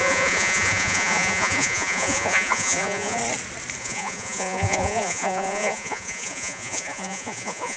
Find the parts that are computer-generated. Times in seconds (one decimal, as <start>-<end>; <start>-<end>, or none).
0.0-3.2; 3.8-7.8